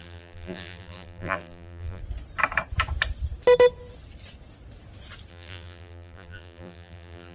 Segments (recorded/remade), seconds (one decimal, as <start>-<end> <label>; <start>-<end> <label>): 0.0-2.0 remade; 2.0-5.3 recorded; 5.3-7.3 remade